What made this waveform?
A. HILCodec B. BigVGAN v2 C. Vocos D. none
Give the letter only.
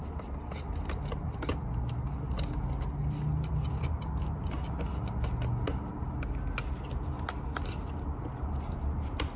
D